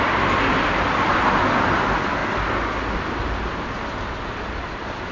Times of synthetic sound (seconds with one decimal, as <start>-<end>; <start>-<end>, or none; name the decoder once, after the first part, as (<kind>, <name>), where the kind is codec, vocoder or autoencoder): none